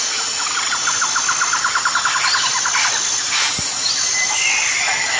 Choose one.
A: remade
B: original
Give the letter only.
B